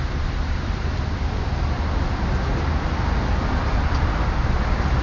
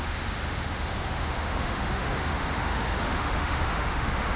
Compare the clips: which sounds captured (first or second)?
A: first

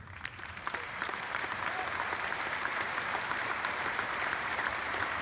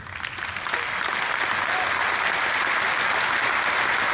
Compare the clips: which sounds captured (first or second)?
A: second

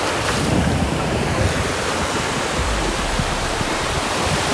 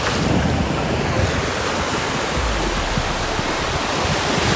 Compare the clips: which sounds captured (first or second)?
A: second